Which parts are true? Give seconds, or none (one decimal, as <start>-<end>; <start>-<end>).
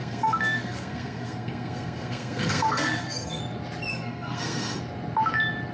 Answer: 3.4-3.9; 4.8-5.7